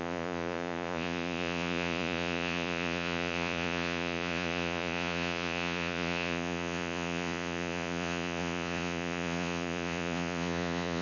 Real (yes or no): no